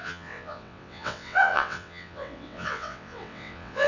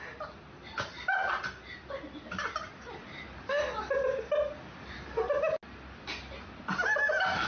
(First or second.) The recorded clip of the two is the second